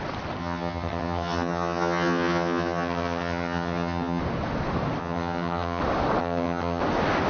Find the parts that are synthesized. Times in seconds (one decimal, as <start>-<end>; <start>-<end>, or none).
0.4-4.2; 5.0-5.8; 6.2-6.8